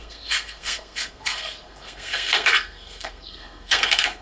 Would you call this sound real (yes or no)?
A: no